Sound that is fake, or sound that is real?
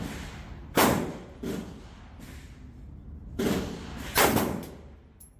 real